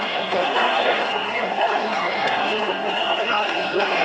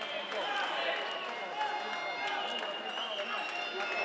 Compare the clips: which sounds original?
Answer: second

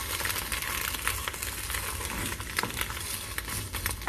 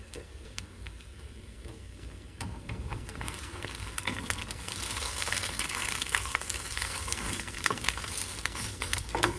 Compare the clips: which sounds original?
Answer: first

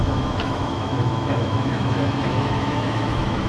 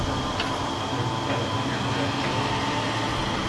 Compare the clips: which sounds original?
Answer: second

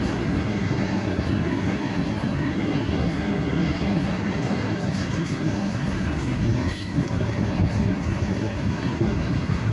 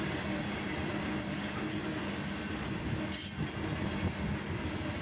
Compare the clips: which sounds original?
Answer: second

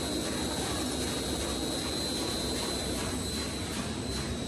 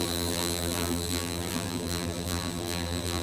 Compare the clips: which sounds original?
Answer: first